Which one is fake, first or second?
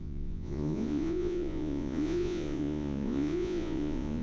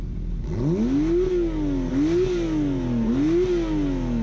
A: first